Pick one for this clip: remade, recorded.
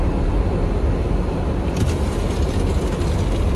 recorded